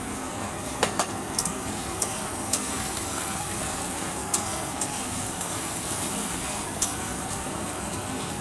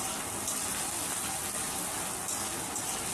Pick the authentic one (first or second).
second